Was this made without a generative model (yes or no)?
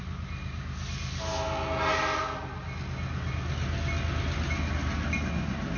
yes